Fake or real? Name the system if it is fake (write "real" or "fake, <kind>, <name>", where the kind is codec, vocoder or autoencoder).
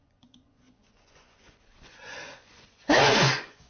fake, vocoder, Vocos